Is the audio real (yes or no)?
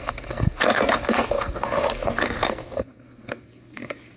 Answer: no